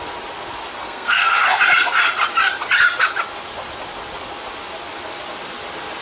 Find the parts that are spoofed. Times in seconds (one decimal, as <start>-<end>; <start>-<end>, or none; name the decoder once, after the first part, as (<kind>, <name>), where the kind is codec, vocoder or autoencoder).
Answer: 0.8-1.6 (codec, SNAC)